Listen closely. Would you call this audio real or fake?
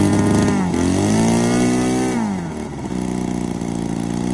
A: real